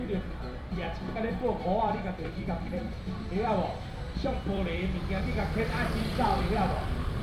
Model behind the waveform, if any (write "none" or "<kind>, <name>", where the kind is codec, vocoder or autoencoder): vocoder, BigVGAN v2